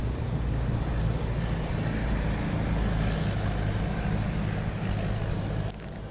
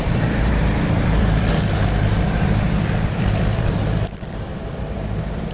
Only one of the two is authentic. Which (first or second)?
first